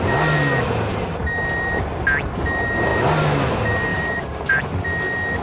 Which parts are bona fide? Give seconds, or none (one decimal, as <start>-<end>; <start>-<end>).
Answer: 0.0-3.9; 4.6-5.4